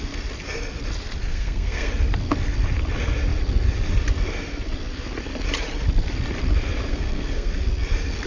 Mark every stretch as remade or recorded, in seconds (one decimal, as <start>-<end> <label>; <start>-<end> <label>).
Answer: 0.0-1.3 recorded; 1.3-1.9 remade; 1.9-6.9 recorded; 6.9-7.5 remade; 7.5-8.3 recorded